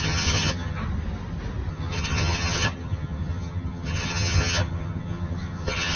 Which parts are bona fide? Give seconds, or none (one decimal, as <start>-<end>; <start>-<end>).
0.8-1.7